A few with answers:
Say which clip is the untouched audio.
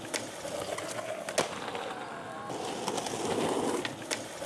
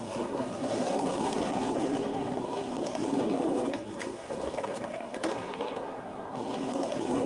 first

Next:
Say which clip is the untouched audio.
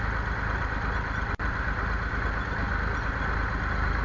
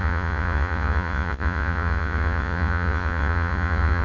first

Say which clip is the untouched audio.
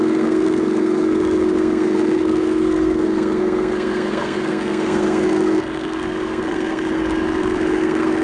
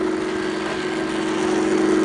second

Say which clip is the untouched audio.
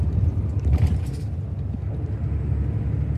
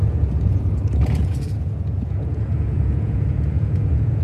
first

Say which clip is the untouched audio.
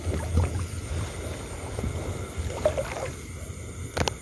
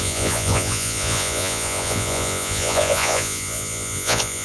first